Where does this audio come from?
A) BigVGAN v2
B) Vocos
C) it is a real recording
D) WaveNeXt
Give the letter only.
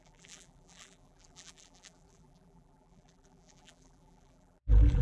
A